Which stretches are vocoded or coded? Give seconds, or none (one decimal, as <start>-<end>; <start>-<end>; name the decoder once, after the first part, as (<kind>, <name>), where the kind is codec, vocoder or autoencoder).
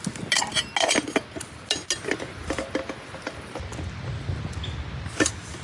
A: none